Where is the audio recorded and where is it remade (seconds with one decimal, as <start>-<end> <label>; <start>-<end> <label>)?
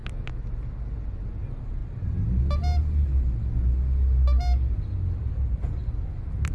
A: 0.0-6.5 recorded